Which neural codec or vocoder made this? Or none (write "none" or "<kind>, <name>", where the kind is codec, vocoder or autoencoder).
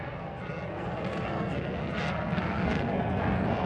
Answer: codec, SNAC